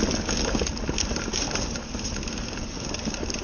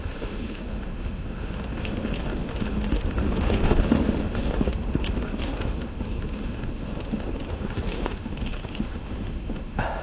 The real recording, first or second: first